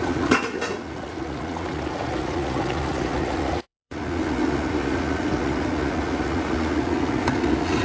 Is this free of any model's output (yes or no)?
no